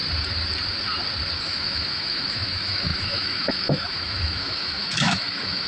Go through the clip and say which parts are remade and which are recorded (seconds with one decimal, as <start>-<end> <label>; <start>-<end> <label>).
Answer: 0.0-1.4 recorded; 1.4-5.7 remade